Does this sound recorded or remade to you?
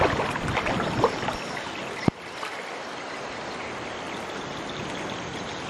recorded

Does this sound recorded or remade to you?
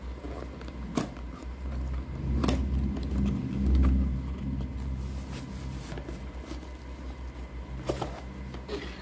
recorded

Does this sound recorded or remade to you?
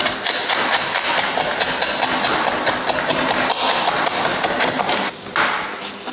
recorded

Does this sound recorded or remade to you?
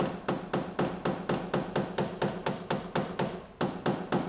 recorded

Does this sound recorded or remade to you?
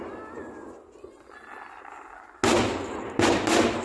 recorded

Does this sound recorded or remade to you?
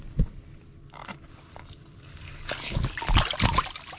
recorded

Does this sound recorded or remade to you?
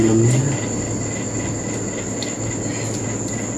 recorded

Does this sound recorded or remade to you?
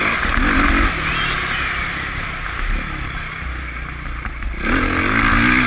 recorded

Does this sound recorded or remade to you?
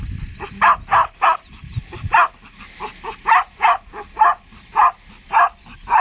recorded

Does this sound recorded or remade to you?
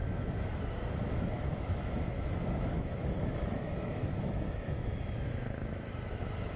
remade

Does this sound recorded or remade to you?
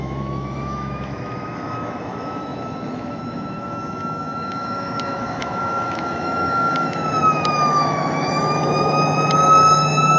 remade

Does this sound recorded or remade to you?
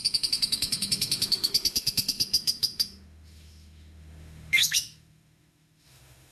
remade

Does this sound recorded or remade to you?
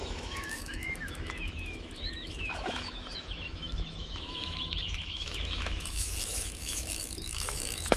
remade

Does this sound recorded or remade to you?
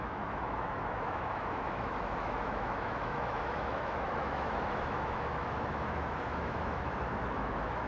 remade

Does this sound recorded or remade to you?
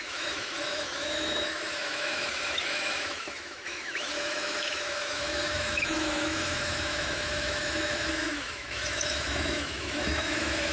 remade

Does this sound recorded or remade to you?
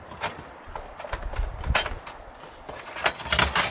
recorded